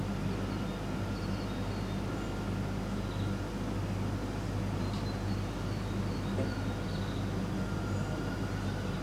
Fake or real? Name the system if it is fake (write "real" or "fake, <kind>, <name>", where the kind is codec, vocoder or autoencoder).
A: real